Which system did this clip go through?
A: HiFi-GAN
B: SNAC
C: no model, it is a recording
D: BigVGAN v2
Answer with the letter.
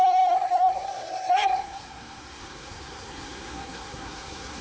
B